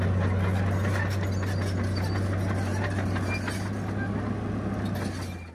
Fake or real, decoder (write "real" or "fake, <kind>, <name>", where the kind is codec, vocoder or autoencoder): real